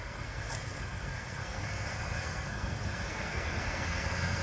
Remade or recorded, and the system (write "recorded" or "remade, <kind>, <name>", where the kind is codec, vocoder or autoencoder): remade, codec, SNAC